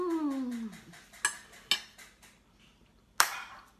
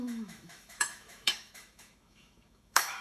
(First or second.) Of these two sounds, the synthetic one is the second